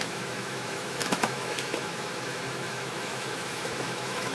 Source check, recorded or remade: remade